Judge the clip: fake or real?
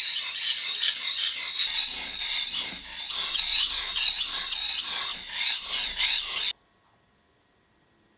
real